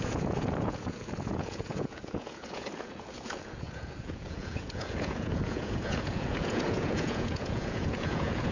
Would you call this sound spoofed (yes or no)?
yes